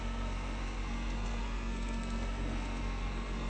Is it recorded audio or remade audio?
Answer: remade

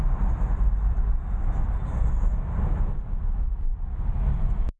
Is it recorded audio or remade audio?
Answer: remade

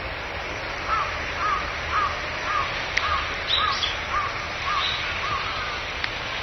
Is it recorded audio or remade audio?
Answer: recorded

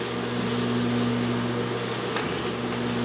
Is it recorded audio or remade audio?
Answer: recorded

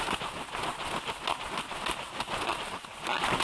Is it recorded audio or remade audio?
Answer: recorded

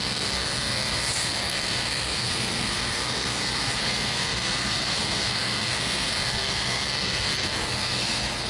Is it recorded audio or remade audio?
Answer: remade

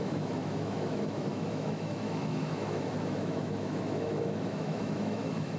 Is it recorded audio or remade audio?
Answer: remade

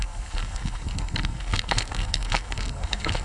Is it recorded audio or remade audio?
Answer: remade